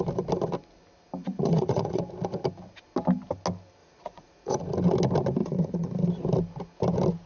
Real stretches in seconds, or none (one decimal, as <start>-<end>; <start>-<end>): 0.0-1.2; 2.0-3.8; 4.6-5.4; 5.9-7.3